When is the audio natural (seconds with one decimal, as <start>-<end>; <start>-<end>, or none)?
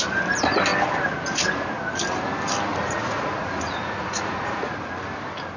0.0-2.7; 4.9-5.6